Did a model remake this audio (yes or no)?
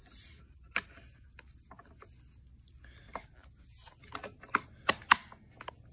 no